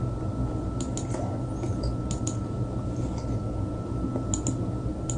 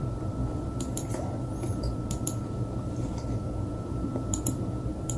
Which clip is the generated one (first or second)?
second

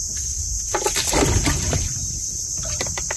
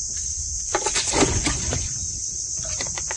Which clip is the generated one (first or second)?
second